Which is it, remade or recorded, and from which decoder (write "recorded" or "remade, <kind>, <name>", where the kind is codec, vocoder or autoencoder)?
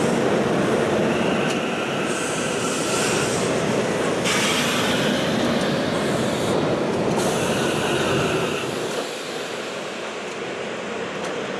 recorded